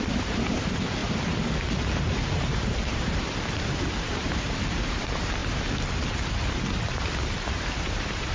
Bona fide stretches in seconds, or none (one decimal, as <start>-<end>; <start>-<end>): 1.0-2.0; 5.4-7.3